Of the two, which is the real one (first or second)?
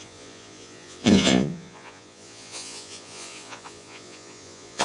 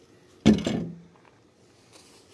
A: second